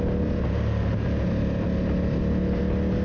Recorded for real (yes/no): yes